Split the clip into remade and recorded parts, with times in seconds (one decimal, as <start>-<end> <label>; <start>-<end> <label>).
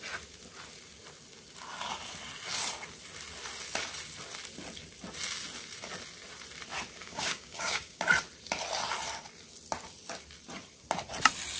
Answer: 0.0-7.0 recorded; 7.0-8.0 remade; 8.0-11.6 recorded